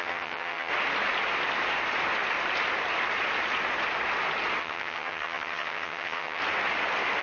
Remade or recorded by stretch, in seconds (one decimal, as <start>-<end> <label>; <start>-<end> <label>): 0.0-0.7 remade; 0.7-4.6 recorded; 4.6-6.4 remade; 6.4-7.2 recorded